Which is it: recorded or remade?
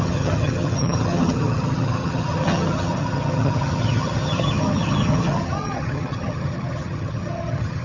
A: remade